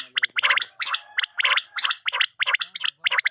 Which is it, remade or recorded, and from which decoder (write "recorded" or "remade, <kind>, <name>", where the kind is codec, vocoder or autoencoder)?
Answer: recorded